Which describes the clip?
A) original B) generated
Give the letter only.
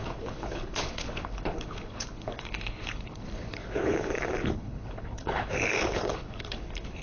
B